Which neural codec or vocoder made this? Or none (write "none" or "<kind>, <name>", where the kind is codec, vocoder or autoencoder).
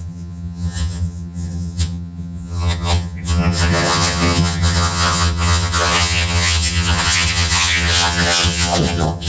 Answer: vocoder, HiFi-GAN